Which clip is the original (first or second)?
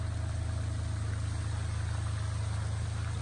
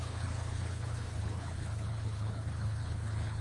first